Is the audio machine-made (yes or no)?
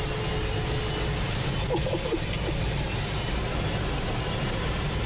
no